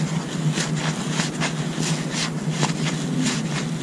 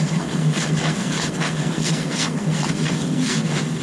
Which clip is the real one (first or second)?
first